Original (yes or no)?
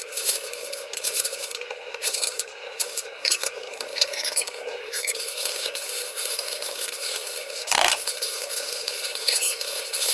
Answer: no